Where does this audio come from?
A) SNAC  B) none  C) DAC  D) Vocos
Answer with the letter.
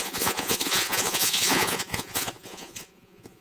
D